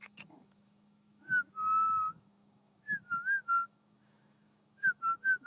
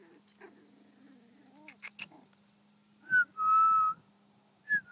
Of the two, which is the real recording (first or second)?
second